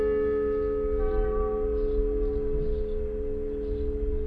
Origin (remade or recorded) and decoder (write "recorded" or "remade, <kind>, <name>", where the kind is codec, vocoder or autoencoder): recorded